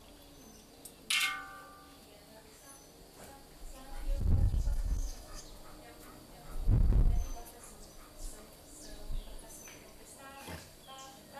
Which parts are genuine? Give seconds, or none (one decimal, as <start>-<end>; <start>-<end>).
0.0-4.4; 5.4-11.4